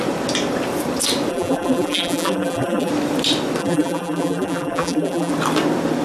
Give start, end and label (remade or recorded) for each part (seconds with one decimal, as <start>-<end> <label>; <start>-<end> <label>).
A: 0.0-1.3 recorded; 1.3-2.9 remade; 2.9-3.6 recorded; 3.6-5.3 remade; 5.3-6.0 recorded